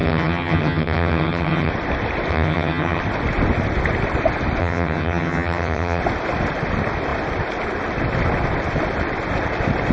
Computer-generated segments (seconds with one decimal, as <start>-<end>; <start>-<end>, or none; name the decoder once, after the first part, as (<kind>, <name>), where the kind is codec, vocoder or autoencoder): 0.0-1.7 (vocoder, HiFi-GAN); 2.3-3.0; 4.6-6.0